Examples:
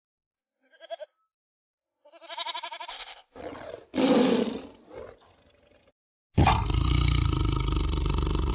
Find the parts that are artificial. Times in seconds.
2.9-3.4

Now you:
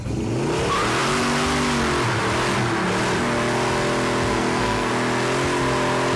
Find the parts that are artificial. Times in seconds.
4.3-4.9

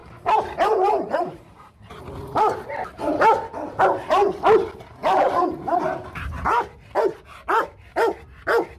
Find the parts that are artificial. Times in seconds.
0.0-2.7; 5.0-6.6

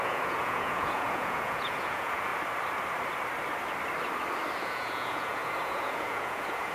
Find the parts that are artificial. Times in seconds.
0.0-2.3; 4.6-6.7